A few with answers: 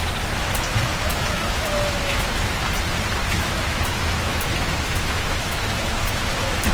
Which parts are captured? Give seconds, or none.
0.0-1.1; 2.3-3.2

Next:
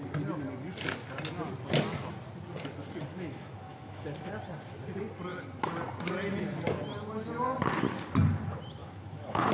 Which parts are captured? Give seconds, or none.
0.0-3.1; 4.3-8.8